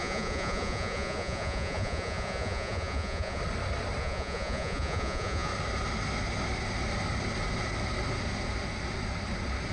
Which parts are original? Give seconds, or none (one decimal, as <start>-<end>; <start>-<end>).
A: 3.4-4.0; 5.5-9.7